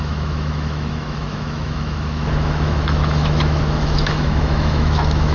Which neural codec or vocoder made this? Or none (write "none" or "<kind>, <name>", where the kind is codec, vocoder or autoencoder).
autoencoder, DAC-VAE